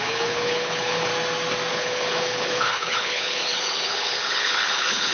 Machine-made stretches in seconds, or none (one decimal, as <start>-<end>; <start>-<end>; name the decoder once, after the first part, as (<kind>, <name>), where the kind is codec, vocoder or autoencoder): 0.0-1.1 (codec, HILCodec); 1.7-5.1